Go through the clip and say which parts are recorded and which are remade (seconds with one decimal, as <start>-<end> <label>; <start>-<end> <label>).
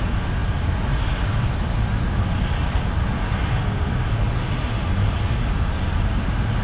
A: 0.0-6.6 recorded